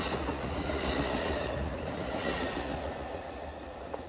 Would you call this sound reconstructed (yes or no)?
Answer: yes